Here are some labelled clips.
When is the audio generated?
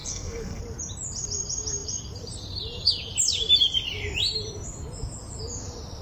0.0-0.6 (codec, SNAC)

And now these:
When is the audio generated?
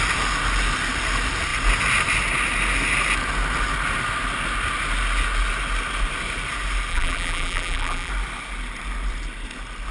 6.9-8.1 (vocoder, BigVGAN v2)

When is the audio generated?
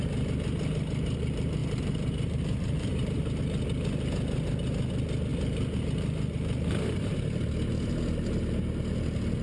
1.6-3.4 (vocoder, BigVGAN v2)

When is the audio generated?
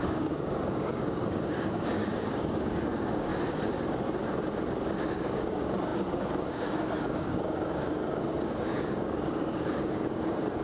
0.0-3.3 (codec, DAC); 5.1-10.6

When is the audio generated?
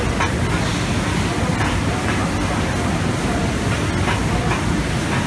none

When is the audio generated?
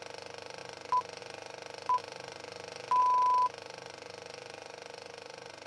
none